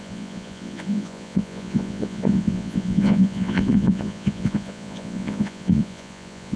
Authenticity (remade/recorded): remade